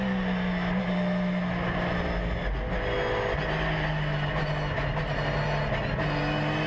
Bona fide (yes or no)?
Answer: yes